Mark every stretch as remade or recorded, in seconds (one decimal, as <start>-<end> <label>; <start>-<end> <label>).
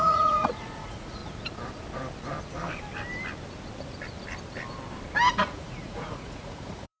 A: 0.0-1.2 remade; 1.2-5.3 recorded; 5.3-7.0 remade